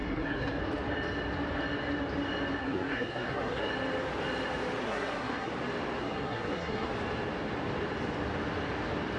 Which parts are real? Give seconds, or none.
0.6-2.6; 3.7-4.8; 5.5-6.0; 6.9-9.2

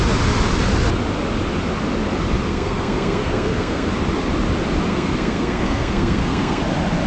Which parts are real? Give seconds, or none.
0.0-2.5; 3.9-4.9; 6.6-7.1

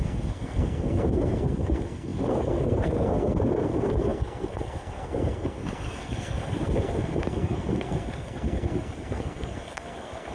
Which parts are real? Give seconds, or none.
none